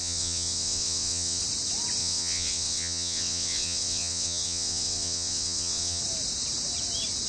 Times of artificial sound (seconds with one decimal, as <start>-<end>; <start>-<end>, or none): 0.0-1.4; 2.0-6.0